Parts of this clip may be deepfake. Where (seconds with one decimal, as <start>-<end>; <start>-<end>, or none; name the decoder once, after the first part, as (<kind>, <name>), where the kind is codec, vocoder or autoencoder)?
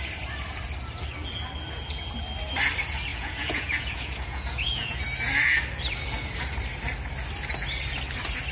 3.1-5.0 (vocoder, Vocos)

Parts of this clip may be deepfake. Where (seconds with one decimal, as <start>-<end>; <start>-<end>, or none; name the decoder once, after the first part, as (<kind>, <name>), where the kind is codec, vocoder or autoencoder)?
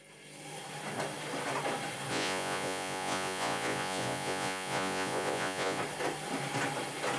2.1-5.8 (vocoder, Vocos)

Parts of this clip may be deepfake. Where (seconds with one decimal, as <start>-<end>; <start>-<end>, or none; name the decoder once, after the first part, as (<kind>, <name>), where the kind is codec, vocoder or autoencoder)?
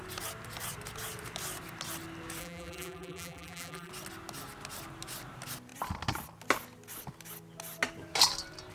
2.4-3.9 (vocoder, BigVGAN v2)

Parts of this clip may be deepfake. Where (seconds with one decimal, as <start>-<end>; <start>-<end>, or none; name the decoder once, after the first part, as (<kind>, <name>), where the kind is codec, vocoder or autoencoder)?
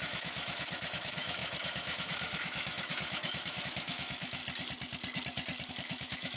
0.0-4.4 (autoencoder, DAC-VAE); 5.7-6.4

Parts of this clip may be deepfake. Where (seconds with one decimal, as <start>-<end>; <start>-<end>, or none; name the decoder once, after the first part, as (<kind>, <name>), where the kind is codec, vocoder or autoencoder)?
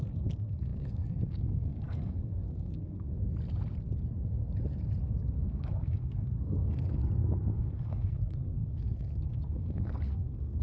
0.0-3.1 (codec, SNAC); 5.5-7.0; 7.7-10.6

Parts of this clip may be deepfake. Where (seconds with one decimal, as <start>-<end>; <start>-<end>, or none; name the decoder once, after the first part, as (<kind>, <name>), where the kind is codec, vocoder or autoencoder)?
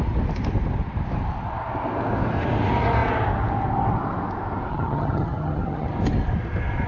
4.7-5.9 (vocoder, HiFi-GAN)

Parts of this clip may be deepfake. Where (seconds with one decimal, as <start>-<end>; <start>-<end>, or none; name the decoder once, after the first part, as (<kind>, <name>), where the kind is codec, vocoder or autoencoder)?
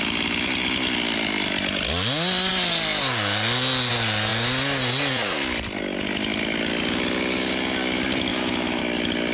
8.3-8.8 (autoencoder, DAC-VAE)